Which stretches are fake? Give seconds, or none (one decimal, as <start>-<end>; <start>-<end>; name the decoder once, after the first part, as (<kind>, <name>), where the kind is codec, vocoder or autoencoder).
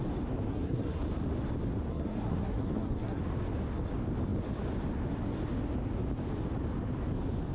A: 0.5-1.0 (codec, SNAC); 1.9-3.2